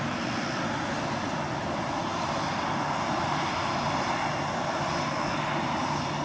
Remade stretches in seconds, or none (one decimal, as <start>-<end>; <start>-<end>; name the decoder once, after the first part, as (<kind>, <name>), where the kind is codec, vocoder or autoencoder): none

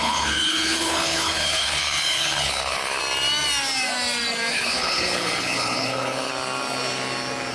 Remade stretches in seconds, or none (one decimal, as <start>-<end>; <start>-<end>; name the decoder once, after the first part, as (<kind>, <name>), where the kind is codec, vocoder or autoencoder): 0.0-3.0 (codec, HILCodec); 4.5-6.3

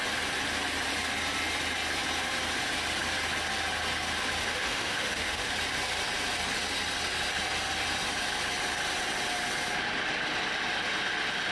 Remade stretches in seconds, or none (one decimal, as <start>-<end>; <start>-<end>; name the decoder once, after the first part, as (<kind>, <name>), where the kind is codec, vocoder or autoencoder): 4.4-5.5 (autoencoder, DAC-VAE)

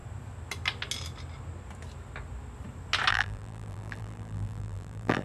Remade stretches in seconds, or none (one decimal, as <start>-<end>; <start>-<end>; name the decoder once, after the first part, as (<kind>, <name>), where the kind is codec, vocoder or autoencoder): 3.1-5.2 (vocoder, BigVGAN v2)

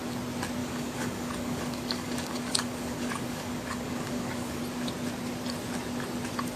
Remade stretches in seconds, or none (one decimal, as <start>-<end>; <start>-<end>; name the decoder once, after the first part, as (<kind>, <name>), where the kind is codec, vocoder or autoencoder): 0.6-4.6 (codec, DAC)

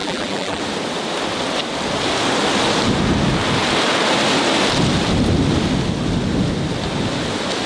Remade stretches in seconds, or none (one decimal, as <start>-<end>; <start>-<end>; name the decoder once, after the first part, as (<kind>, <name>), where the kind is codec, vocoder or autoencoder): 0.0-0.6 (vocoder, BigVGAN v2)

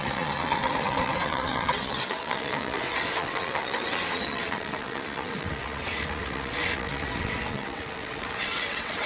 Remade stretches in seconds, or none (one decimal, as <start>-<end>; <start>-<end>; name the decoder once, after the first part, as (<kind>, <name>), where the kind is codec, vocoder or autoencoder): 0.0-9.1 (vocoder, WaveNeXt)